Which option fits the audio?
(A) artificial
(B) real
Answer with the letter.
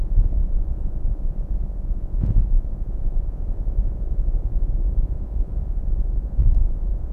A